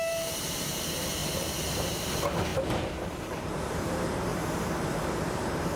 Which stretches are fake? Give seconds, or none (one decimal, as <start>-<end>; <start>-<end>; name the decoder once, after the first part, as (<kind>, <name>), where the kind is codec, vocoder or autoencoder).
0.0-5.8 (vocoder, BigVGAN v2)